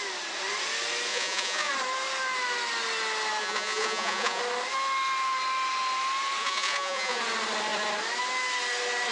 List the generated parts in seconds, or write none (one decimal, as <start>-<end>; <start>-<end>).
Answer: 1.1-1.7; 3.4-4.4; 6.4-7.2